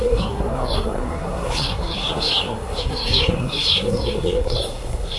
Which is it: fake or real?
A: fake